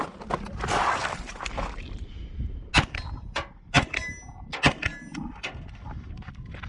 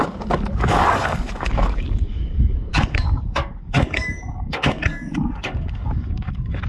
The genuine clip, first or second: first